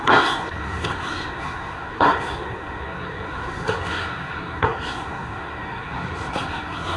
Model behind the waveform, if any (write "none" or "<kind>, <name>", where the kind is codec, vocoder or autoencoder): codec, SNAC